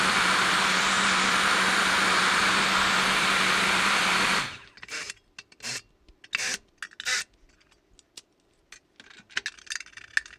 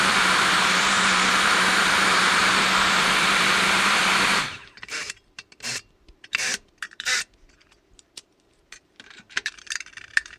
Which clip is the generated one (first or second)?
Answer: second